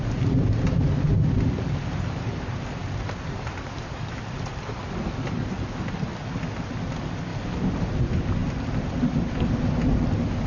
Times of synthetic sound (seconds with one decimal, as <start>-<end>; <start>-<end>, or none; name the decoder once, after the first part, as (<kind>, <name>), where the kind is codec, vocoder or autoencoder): 2.8-4.8 (vocoder, BigVGAN v2); 7.3-7.9; 8.4-9.1